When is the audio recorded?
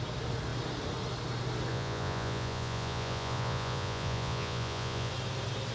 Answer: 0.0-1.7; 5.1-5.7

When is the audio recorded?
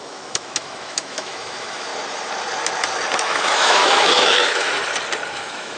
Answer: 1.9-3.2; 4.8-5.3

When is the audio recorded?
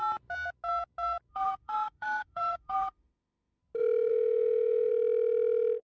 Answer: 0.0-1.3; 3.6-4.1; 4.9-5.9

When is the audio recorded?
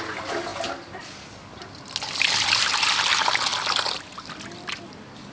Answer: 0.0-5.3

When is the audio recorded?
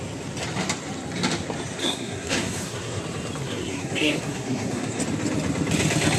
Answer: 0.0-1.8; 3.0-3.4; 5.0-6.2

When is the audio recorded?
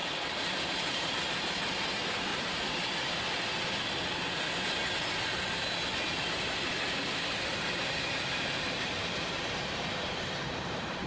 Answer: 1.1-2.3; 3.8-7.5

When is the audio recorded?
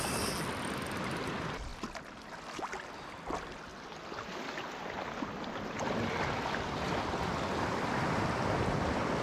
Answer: 0.0-9.2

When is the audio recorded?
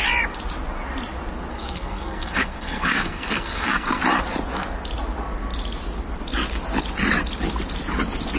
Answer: 0.0-1.5; 4.0-8.4